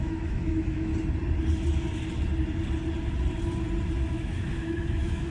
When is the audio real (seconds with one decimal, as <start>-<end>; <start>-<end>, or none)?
0.9-4.1

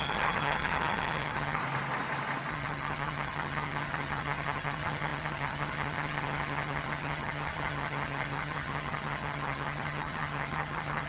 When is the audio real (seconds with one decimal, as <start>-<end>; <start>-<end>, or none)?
1.6-2.5

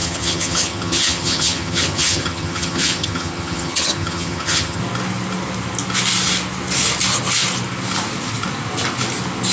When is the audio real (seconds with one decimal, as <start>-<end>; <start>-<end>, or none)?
4.8-9.5

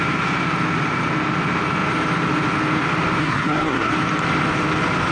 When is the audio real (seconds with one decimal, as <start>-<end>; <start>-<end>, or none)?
0.0-3.2; 3.9-5.1

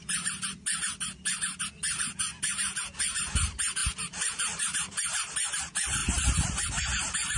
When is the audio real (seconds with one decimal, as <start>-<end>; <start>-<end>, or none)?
0.0-7.4

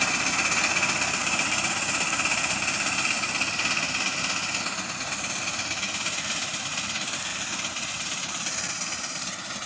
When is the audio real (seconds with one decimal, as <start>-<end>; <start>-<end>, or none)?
0.0-1.2; 1.8-7.3

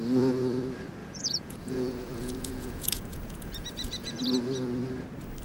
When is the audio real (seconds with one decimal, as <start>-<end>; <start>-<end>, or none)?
0.0-1.0; 4.2-5.4

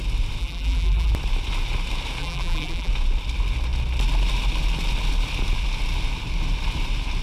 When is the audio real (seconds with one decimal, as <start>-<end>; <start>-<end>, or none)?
0.0-0.4; 1.1-2.2; 2.9-7.2